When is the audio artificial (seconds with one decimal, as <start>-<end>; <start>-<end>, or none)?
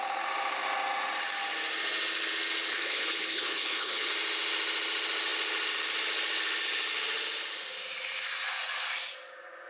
2.7-4.1